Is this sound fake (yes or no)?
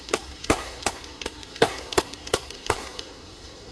yes